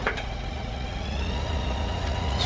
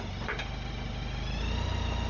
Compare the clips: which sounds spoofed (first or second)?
first